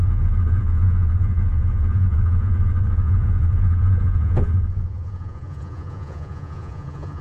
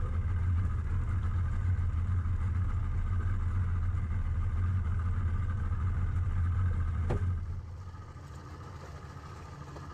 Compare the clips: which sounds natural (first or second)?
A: second